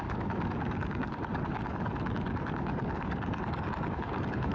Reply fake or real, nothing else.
fake